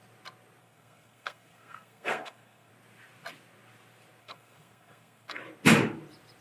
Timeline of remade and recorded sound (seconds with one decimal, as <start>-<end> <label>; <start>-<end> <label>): 0.0-0.6 recorded; 0.6-2.7 remade; 2.7-4.2 recorded; 4.2-5.4 remade; 5.4-6.4 recorded